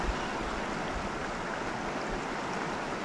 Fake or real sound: real